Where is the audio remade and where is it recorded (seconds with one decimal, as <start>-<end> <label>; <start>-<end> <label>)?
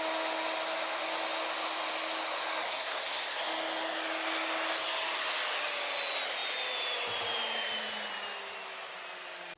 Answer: 0.0-2.7 recorded; 2.7-3.4 remade; 3.4-9.6 recorded